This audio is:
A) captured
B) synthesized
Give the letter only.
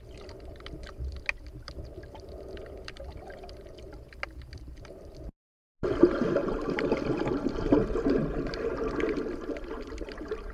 A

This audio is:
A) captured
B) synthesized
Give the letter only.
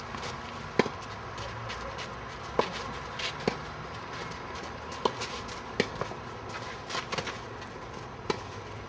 A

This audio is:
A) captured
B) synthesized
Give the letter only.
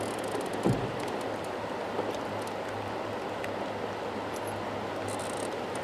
A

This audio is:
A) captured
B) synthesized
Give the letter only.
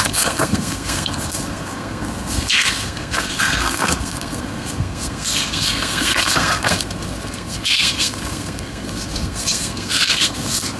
B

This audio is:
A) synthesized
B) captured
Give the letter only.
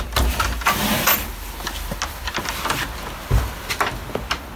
B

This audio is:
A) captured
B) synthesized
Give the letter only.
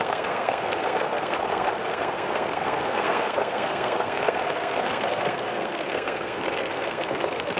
B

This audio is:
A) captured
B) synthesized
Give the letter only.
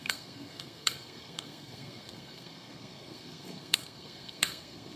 B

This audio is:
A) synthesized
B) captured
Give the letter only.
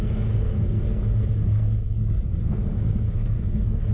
A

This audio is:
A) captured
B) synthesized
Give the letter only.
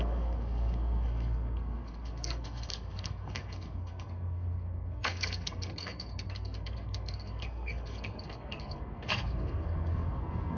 B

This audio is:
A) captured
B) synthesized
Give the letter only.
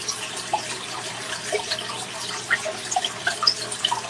A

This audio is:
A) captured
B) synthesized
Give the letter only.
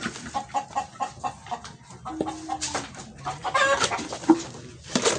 A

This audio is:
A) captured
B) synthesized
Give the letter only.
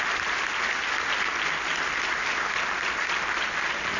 A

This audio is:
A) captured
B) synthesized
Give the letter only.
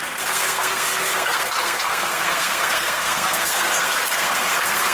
B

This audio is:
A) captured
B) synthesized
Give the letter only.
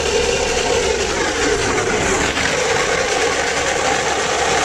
A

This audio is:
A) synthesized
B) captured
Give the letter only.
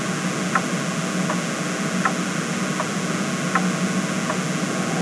B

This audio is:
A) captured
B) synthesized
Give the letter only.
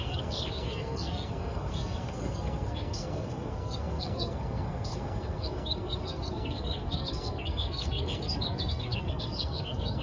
B